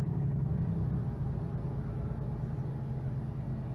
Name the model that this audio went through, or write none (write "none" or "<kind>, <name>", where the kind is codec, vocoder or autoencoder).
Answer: none